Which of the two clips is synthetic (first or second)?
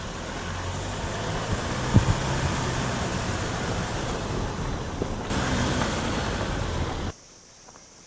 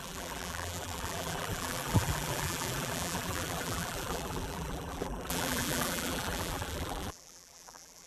second